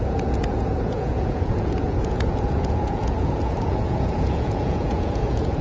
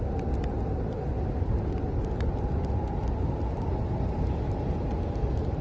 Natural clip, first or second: second